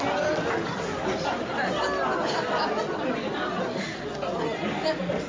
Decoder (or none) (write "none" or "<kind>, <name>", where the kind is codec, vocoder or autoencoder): none